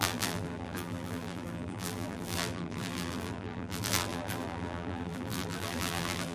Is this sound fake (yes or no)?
yes